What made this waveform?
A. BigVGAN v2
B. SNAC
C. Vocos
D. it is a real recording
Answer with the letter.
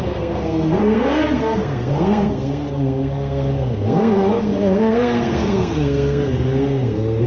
B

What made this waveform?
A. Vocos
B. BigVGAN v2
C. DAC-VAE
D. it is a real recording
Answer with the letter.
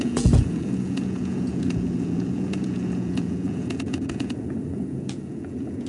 A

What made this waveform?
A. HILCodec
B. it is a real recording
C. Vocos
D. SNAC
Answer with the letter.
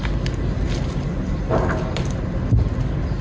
B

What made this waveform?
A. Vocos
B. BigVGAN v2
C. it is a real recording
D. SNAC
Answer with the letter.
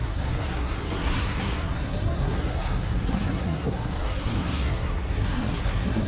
D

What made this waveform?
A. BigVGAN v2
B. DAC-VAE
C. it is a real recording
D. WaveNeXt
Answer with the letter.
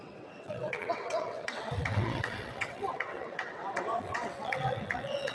D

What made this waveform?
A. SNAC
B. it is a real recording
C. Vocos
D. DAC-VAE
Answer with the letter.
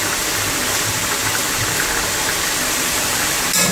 B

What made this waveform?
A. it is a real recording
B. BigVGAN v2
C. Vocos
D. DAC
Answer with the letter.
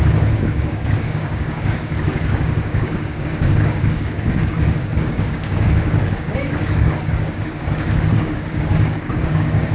D